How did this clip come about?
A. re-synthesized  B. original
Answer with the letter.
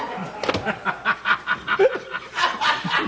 B